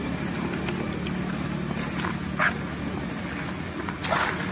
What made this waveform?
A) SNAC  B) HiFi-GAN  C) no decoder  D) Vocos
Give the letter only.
C